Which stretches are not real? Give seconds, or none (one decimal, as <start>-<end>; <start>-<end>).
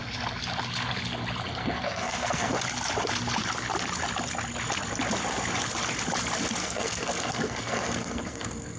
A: 1.6-2.5; 6.6-8.8